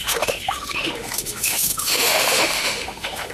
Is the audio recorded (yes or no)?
no